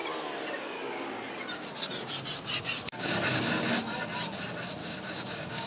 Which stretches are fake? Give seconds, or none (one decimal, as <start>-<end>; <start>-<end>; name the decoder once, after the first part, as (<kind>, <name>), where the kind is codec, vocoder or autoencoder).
4.8-5.7 (codec, DAC)